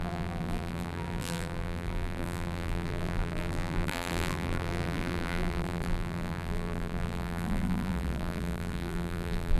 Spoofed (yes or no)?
yes